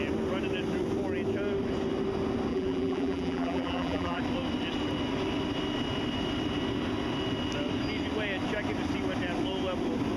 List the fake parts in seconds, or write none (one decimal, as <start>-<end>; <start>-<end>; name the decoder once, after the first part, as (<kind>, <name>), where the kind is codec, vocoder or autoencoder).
2.5-4.2 (vocoder, BigVGAN v2)